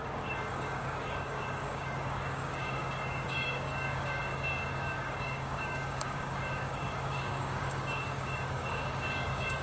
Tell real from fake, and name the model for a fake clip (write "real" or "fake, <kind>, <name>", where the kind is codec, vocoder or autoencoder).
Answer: fake, codec, DAC